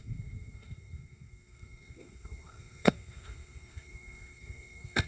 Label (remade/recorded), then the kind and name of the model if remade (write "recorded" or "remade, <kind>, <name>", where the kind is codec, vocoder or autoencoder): remade, codec, SNAC